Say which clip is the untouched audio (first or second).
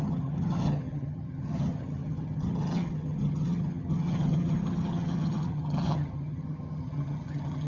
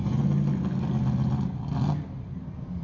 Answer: second